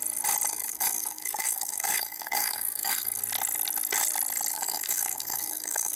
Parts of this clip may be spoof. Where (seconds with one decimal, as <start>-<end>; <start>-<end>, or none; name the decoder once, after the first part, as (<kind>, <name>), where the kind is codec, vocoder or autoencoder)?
0.5-3.2 (codec, SNAC); 4.5-6.0